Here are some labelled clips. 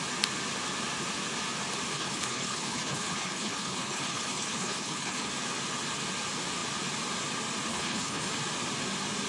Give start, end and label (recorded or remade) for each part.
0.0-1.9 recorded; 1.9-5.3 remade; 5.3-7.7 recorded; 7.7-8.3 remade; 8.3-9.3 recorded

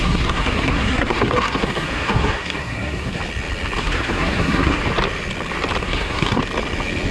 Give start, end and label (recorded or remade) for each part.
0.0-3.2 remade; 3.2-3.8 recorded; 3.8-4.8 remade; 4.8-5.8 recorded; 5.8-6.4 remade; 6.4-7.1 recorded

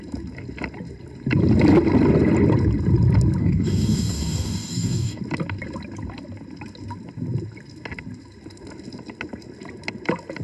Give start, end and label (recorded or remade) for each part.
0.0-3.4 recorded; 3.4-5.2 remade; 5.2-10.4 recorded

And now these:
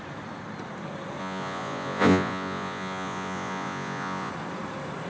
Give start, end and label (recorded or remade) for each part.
0.0-1.2 recorded; 1.2-4.3 remade; 4.3-5.1 recorded

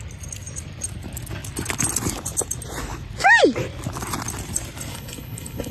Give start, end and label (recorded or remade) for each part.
0.0-4.9 recorded; 4.9-5.7 remade

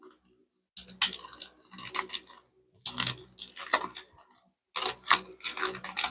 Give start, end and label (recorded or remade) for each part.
0.0-6.1 recorded